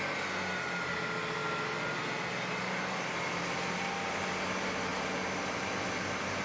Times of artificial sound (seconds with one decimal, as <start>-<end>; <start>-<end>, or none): none